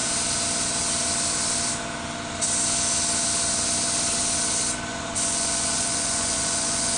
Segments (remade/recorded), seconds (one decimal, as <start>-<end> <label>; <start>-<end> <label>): 0.0-4.9 recorded; 4.9-7.0 remade